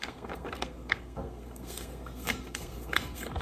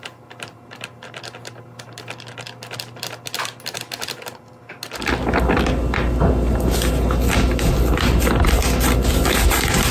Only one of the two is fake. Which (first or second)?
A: first